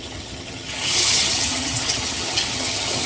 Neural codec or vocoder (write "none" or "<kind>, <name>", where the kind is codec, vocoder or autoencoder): vocoder, HiFi-GAN